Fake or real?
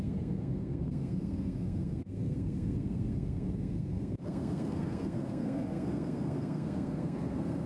fake